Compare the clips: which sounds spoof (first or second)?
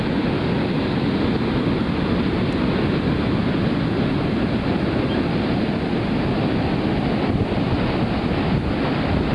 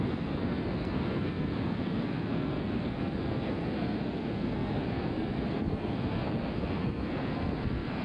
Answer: second